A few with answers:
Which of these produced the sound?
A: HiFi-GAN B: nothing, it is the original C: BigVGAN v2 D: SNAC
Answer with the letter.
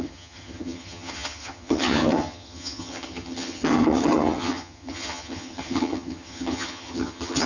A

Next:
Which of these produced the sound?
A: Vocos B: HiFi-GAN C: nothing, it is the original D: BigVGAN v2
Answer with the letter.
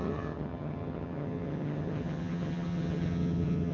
B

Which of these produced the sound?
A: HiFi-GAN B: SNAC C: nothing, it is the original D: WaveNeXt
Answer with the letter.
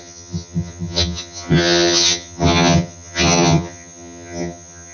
A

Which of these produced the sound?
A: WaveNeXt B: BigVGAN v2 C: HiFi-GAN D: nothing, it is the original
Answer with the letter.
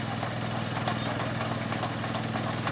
D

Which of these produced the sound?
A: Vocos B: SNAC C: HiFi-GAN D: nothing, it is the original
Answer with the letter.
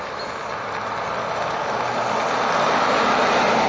D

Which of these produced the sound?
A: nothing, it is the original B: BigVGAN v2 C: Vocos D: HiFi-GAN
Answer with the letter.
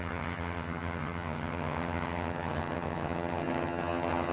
D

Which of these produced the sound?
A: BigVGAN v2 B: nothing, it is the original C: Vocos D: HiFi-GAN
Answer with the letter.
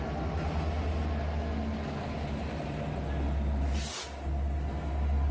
B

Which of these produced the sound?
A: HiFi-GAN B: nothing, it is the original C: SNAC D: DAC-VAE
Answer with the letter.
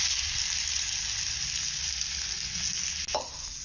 B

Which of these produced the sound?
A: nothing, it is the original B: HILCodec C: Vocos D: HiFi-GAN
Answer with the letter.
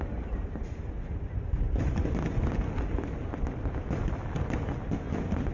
A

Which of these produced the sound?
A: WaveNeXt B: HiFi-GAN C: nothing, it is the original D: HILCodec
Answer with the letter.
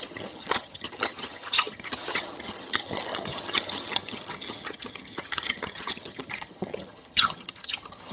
B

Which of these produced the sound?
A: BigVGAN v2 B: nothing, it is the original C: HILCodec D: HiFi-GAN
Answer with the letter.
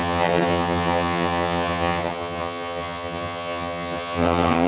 D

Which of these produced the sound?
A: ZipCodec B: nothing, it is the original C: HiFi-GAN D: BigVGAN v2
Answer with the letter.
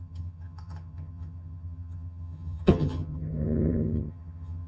C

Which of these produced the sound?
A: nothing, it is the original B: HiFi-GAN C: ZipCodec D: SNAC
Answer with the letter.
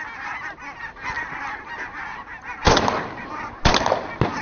A